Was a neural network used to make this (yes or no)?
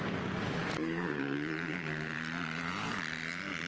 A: yes